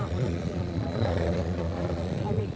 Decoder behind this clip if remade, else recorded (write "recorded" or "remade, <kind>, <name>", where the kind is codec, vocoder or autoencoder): remade, vocoder, Vocos